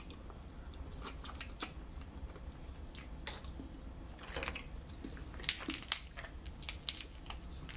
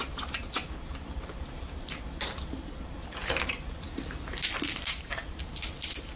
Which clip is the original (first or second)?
first